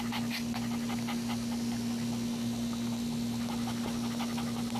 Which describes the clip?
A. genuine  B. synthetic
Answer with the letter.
A